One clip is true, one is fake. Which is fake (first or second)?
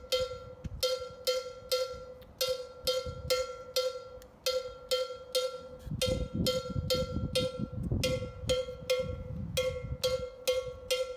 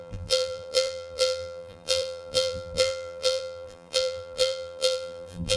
second